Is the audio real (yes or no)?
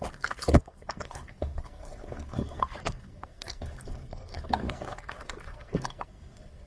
no